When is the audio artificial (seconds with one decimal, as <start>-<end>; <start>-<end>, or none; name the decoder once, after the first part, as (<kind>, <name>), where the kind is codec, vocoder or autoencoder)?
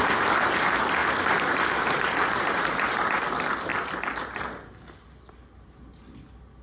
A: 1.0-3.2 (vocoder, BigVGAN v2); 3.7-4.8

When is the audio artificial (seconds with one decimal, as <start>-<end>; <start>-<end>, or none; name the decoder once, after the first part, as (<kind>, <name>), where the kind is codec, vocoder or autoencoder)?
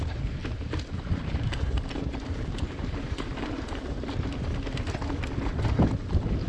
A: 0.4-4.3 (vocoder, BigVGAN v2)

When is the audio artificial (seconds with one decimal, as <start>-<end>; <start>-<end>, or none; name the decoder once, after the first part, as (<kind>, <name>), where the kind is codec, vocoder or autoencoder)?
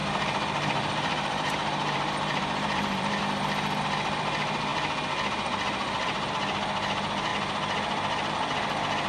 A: 0.0-3.2 (vocoder, BigVGAN v2)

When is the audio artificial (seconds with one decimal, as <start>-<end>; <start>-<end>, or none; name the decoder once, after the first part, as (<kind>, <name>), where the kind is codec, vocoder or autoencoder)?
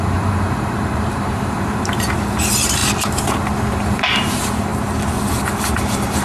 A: 0.0-2.8 (vocoder, BigVGAN v2); 3.7-4.7; 5.3-6.2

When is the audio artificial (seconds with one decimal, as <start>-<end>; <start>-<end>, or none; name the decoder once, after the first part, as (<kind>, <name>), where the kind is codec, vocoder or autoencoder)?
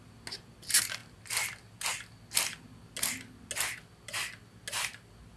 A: none